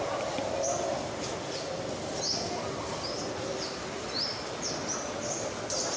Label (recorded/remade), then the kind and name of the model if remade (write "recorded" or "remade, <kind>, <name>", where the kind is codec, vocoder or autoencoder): recorded